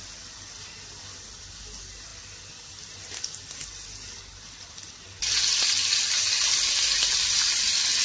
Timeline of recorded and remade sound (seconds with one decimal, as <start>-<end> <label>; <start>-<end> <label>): 0.0-8.0 recorded